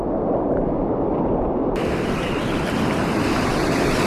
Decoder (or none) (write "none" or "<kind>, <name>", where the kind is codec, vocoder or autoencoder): none